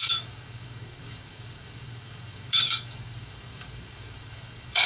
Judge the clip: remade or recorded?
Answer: remade